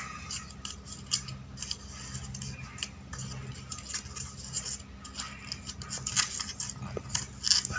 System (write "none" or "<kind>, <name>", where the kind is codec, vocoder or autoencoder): none